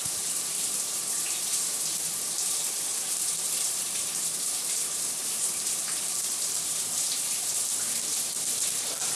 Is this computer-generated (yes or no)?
yes